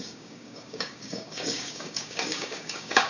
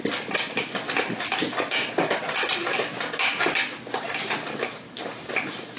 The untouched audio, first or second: second